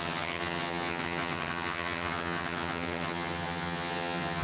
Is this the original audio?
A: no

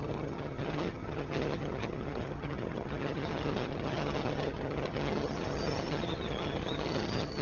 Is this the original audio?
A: no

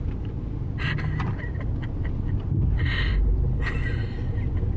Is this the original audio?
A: yes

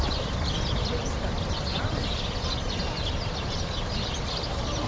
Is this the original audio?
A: yes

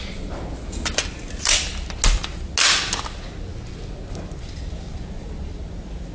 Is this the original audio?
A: yes